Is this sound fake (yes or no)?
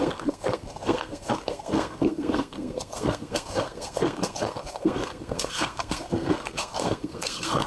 yes